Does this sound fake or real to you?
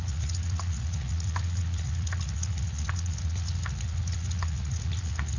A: fake